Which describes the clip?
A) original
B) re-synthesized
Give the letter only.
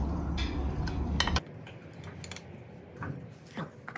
A